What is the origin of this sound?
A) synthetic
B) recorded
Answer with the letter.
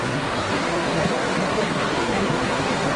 A